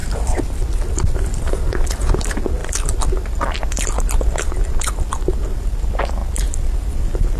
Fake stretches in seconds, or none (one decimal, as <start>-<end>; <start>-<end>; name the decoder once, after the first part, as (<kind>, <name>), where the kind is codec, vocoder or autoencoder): 6.2-6.9 (vocoder, BigVGAN v2)